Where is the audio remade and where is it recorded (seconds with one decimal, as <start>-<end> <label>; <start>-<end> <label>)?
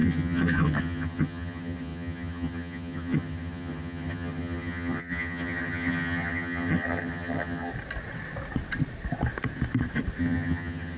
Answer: 0.0-7.7 remade; 7.7-10.2 recorded; 10.2-11.0 remade